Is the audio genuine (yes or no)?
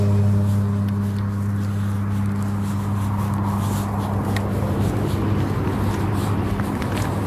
yes